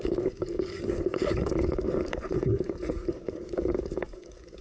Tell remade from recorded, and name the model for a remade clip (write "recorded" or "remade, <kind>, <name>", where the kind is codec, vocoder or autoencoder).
remade, codec, DAC